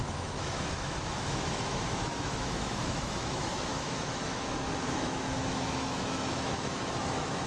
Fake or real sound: fake